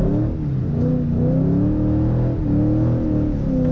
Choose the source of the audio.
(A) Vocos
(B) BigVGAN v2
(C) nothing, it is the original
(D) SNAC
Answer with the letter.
C